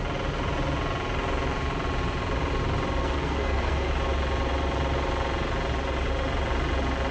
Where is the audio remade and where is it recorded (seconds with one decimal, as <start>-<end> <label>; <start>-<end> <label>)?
0.0-3.0 recorded; 3.0-3.9 remade; 3.9-7.1 recorded